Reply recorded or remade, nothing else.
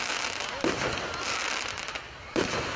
recorded